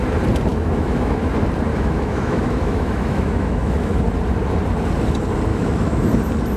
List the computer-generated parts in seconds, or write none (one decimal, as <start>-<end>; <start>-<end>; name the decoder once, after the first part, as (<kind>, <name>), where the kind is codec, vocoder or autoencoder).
0.5-1.2 (autoencoder, DAC-VAE); 1.7-4.0; 5.5-6.1